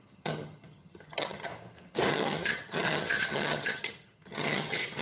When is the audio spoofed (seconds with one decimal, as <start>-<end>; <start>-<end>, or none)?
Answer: 0.0-1.5; 2.1-5.0